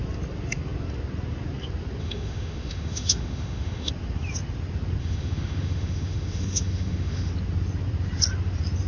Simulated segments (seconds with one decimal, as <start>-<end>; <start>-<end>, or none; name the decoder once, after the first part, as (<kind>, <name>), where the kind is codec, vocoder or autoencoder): 2.0-3.9 (autoencoder, DAC-VAE); 5.0-7.3